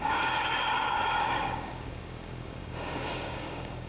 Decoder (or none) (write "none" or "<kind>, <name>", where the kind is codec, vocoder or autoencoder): codec, DAC